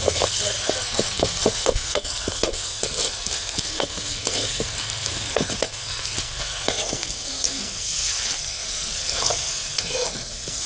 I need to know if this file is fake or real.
fake